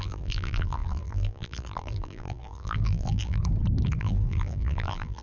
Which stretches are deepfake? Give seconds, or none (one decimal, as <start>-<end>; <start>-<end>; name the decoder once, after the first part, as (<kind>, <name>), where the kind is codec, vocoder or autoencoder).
0.0-3.4 (vocoder, BigVGAN v2); 4.0-5.2